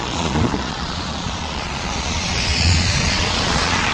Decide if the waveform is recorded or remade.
remade